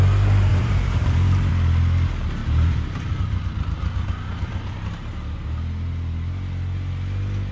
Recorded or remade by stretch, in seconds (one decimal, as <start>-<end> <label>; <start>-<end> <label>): 0.0-0.5 recorded; 0.5-1.5 remade; 1.5-2.4 recorded; 2.4-3.1 remade; 3.1-7.5 recorded